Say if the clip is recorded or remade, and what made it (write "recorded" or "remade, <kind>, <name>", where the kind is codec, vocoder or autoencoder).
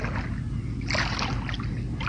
recorded